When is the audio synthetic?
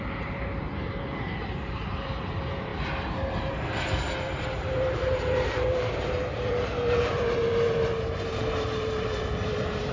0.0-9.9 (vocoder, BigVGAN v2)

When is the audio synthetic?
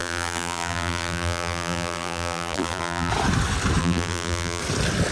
0.0-3.1 (vocoder, BigVGAN v2); 3.8-4.6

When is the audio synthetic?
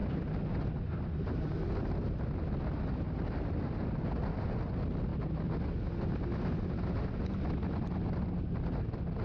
none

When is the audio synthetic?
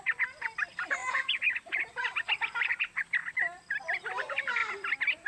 0.0-1.0 (vocoder, BigVGAN v2); 2.7-3.2; 3.8-4.6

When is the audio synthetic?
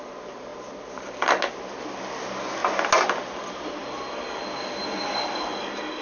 none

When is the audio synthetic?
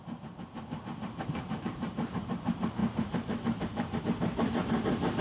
0.0-5.2 (vocoder, BigVGAN v2)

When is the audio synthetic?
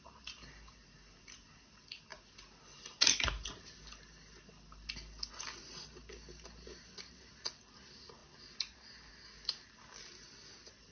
none